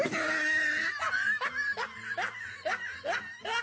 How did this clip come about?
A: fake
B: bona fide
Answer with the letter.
B